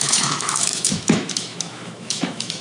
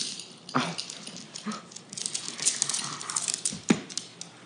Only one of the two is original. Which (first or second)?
second